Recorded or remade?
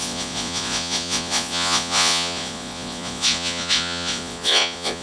remade